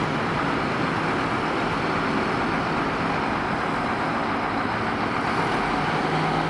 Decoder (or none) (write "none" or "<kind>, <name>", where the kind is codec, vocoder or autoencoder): none